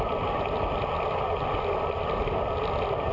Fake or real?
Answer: real